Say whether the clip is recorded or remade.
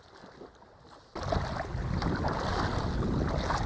recorded